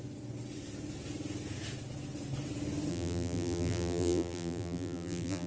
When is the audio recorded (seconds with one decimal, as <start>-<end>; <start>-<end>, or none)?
0.0-2.9